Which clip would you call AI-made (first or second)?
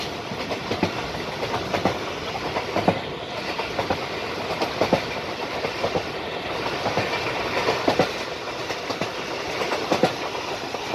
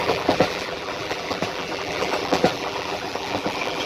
second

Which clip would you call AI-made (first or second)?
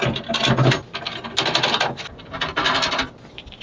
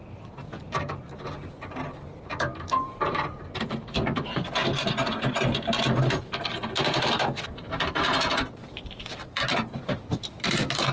second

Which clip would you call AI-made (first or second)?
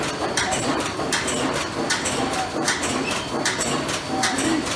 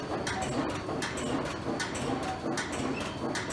first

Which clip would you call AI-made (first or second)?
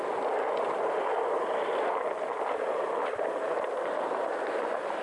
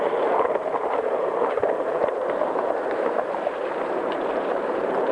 second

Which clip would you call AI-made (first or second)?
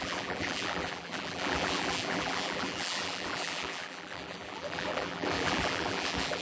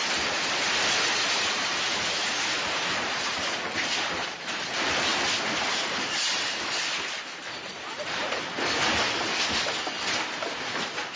first